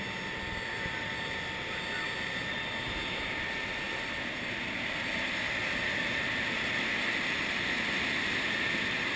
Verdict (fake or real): real